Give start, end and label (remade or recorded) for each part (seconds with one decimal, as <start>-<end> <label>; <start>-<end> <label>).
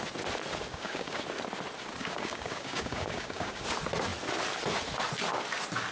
0.0-0.7 recorded; 0.7-1.2 remade; 1.2-2.0 recorded; 2.0-3.6 remade; 3.6-5.9 recorded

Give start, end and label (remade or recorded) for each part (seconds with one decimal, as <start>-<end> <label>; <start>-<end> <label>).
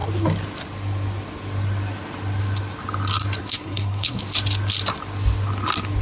0.0-3.4 recorded; 3.4-4.2 remade; 4.2-6.0 recorded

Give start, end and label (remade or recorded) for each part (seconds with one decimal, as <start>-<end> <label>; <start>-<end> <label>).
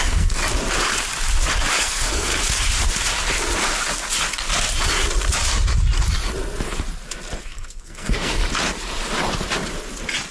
0.0-0.4 remade; 0.4-1.8 recorded; 1.8-2.3 remade; 2.3-7.4 recorded; 7.4-8.4 remade; 8.4-10.3 recorded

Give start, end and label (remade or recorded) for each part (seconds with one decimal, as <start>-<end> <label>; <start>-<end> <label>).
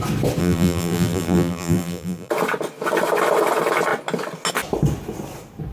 0.0-0.4 recorded; 0.4-2.3 remade; 2.3-5.7 recorded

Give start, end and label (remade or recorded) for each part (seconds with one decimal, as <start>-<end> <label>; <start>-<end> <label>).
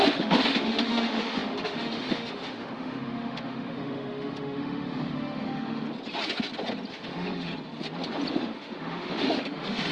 0.0-5.8 remade; 5.8-6.9 recorded; 6.9-7.5 remade; 7.5-8.4 recorded; 8.4-9.9 remade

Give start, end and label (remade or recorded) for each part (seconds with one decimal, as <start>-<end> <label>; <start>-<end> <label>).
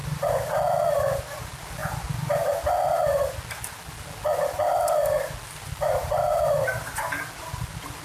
0.0-8.0 recorded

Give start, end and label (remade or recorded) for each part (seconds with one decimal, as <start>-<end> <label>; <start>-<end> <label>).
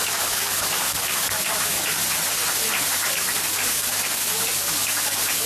0.0-2.0 remade; 2.0-3.1 recorded; 3.1-5.5 remade